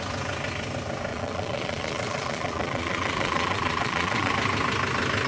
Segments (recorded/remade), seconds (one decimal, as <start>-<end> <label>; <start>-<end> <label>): 0.0-1.1 recorded; 1.1-4.3 remade; 4.3-5.3 recorded